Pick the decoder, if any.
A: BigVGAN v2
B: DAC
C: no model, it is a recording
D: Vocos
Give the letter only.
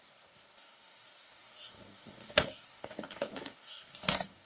B